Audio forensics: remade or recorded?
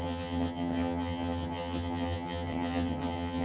remade